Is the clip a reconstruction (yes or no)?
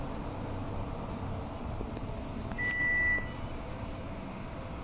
no